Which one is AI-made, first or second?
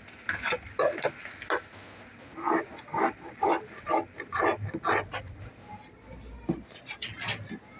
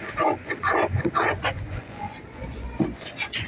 second